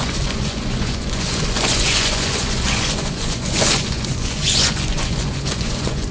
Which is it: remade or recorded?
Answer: remade